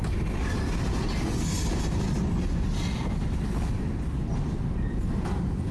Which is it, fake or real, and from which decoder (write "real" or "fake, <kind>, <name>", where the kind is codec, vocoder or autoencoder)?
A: real